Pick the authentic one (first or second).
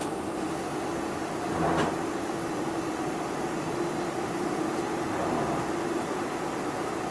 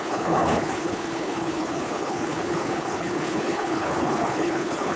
first